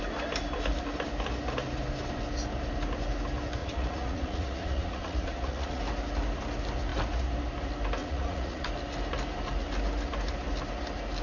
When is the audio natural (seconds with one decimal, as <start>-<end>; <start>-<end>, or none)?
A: 0.0-3.6; 5.8-8.0; 8.7-11.2